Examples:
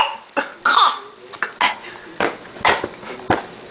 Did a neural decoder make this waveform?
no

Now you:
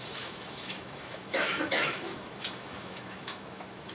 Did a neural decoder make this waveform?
yes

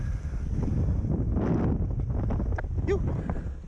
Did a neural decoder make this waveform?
no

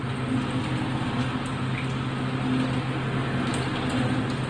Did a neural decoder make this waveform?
no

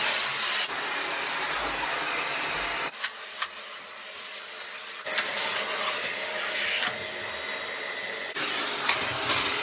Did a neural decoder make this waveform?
no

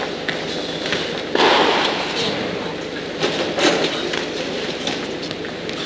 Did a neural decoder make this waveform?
no